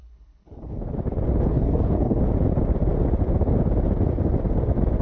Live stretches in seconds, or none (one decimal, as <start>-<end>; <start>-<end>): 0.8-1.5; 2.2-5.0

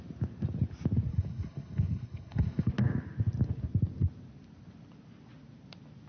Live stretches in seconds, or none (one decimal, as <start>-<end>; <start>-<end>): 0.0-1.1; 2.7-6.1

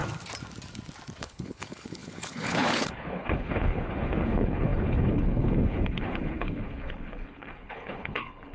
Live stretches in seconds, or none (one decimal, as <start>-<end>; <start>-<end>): 0.0-1.2

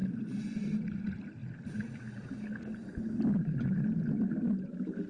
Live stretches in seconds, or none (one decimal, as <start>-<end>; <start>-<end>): 0.0-5.1

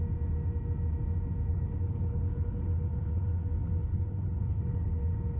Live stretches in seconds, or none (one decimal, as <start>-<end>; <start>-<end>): 0.0-1.5; 3.4-3.8; 5.0-5.4

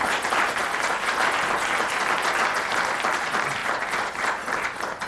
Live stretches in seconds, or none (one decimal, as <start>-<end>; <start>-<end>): 0.0-5.1